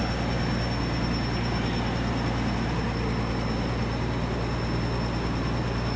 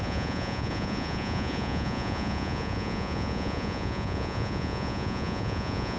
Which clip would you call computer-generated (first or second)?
second